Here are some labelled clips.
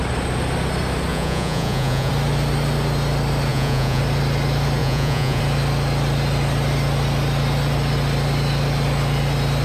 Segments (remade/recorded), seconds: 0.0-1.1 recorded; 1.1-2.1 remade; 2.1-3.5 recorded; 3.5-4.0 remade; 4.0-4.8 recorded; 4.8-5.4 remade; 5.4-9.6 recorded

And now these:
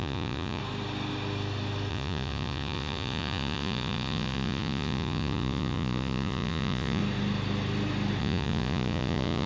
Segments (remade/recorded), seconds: 0.0-0.6 remade; 0.6-1.9 recorded; 1.9-7.0 remade; 7.0-8.2 recorded; 8.2-9.5 remade

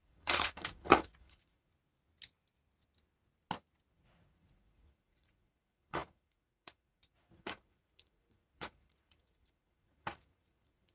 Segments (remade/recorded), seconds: 0.0-1.7 remade; 1.7-3.9 recorded; 3.9-10.9 remade

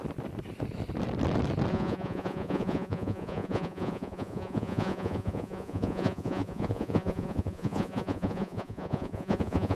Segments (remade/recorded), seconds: 0.0-1.7 recorded; 1.7-9.8 remade